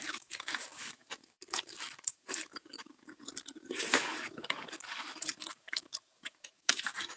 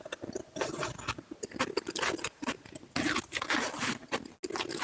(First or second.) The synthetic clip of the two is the first